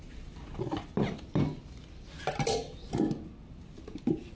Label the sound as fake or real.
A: real